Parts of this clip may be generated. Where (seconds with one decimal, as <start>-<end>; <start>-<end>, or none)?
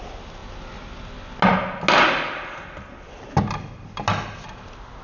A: none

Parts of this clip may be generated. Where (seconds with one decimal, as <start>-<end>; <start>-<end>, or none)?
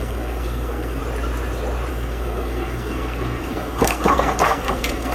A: 0.0-1.0; 1.9-5.1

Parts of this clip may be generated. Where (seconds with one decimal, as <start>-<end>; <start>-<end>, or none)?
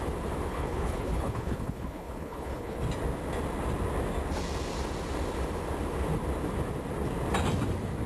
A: 0.5-2.8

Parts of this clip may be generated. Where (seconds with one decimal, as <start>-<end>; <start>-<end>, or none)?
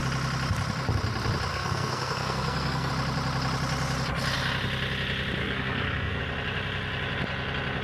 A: 1.5-2.9; 5.4-6.2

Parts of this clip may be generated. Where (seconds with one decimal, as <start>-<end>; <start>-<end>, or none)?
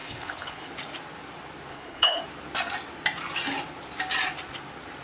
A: 0.0-0.7; 1.7-2.2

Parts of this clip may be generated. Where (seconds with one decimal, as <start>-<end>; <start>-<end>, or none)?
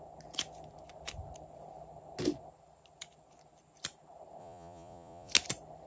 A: 4.4-5.3